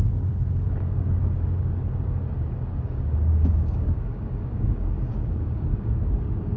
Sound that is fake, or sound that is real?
fake